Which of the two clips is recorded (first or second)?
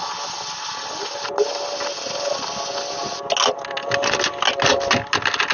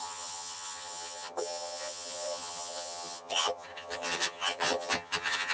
first